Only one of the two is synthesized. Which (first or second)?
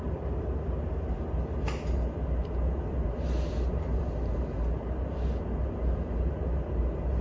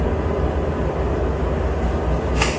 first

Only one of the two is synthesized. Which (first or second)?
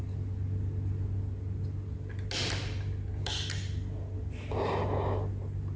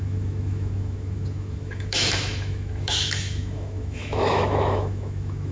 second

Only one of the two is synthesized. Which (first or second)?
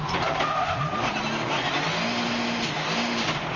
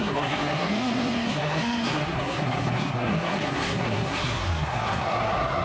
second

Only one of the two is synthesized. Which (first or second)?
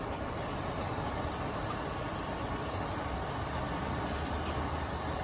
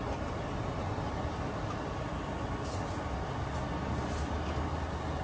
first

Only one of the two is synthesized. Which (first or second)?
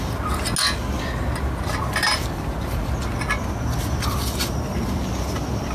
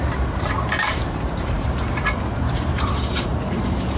second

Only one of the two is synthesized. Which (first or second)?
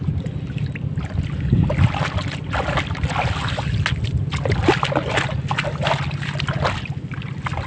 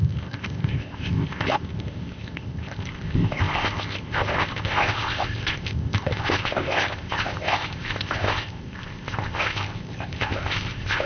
second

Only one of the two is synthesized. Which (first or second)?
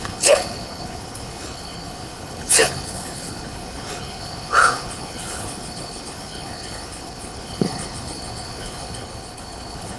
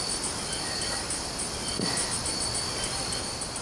first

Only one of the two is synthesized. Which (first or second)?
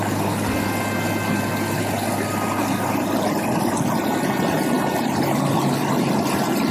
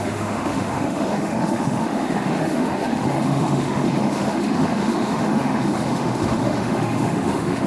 second